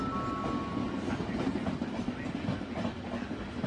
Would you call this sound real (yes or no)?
yes